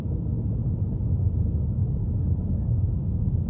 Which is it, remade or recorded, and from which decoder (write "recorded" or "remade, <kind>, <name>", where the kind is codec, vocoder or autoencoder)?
recorded